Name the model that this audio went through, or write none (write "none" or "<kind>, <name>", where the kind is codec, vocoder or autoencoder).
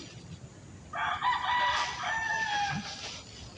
none